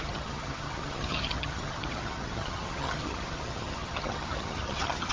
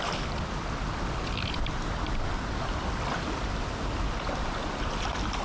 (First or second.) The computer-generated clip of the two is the first